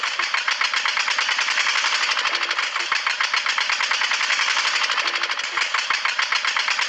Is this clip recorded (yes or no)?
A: yes